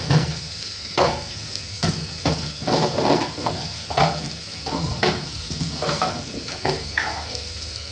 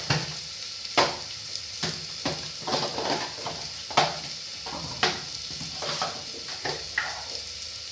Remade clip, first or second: first